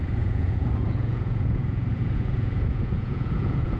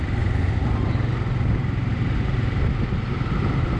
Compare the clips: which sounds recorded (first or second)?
second